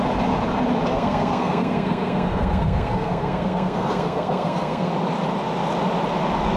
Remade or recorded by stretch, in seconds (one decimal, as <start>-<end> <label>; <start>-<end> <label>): 0.0-0.9 recorded; 0.9-4.9 remade; 4.9-6.6 recorded